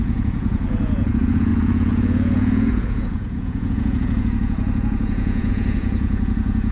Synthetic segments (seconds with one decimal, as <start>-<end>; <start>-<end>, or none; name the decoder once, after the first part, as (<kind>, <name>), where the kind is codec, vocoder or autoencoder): 0.0-6.7 (vocoder, Vocos)

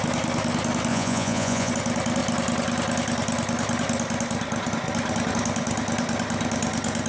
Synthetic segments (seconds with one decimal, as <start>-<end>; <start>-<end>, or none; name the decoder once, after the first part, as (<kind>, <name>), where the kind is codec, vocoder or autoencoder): 0.9-1.7 (vocoder, Vocos)

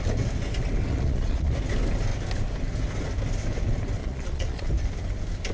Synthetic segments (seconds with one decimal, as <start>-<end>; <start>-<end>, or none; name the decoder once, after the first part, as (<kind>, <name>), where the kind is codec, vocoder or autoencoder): 0.9-1.5 (vocoder, Vocos); 4.0-4.7

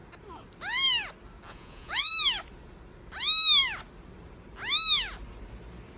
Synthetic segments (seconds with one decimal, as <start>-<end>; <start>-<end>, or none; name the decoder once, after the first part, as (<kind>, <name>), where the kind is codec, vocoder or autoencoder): 1.5-2.1 (vocoder, Vocos)

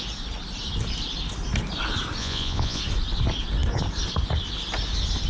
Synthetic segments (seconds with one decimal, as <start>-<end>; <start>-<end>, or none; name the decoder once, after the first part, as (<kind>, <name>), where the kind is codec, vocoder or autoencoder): 2.2-2.8 (vocoder, Vocos)

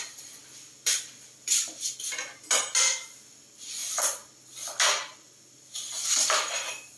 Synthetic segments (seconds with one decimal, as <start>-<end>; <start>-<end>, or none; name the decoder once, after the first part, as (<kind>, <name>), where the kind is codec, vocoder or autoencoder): none

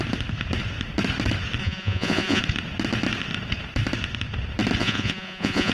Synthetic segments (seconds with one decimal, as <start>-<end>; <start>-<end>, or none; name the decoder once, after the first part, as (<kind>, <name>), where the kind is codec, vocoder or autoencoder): 1.6-2.4 (vocoder, Vocos); 4.8-5.7

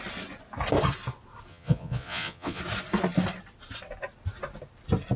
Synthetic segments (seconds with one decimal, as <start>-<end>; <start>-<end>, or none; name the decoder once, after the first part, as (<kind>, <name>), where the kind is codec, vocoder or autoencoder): 1.5-2.6 (vocoder, Vocos)